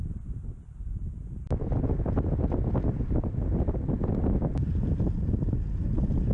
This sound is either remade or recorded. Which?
recorded